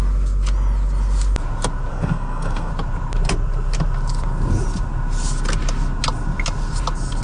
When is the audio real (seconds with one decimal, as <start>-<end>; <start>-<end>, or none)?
0.0-1.9; 2.7-7.2